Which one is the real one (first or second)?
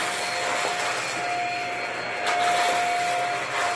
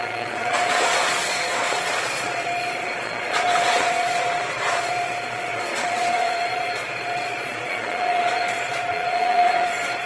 first